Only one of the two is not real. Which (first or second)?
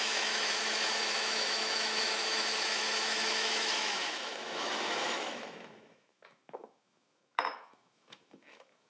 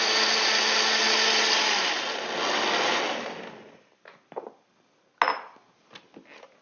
first